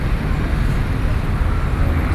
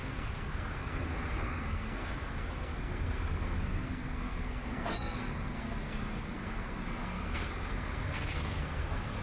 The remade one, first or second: second